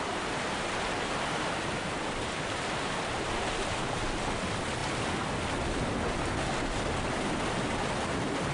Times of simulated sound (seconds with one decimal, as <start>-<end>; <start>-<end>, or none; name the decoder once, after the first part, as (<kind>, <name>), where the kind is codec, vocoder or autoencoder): none